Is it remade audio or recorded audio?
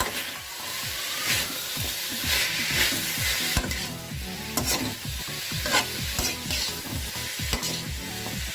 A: recorded